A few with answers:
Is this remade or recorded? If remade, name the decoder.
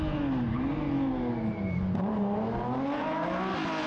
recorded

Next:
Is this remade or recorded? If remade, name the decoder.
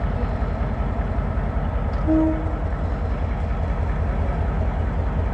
recorded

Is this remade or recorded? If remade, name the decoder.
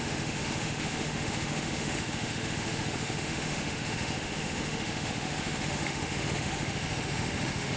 remade, autoencoder, DAC-VAE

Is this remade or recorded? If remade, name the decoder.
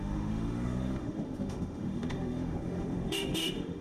remade, autoencoder, DAC-VAE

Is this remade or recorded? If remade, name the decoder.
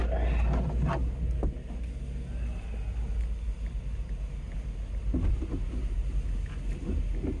recorded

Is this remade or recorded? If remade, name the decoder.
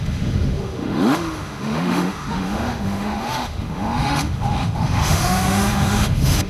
remade, autoencoder, DAC-VAE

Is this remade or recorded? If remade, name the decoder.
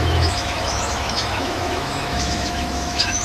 remade, autoencoder, DAC-VAE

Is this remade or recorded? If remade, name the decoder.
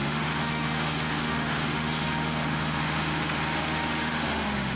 remade, autoencoder, DAC-VAE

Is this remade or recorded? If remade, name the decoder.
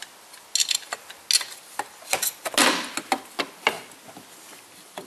recorded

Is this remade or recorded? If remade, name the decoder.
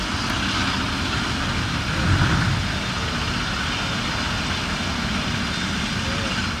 recorded